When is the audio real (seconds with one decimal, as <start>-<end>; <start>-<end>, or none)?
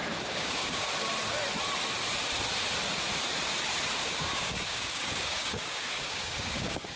0.9-4.0